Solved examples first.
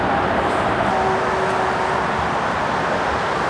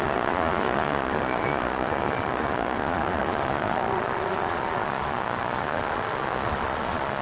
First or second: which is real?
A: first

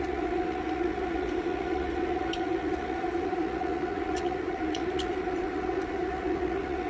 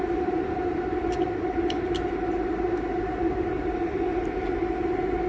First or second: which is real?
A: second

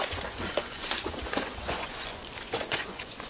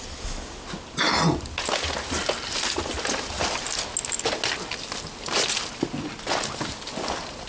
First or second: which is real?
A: second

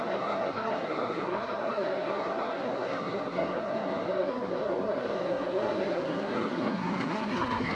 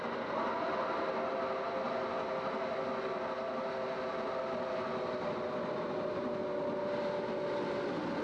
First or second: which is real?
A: second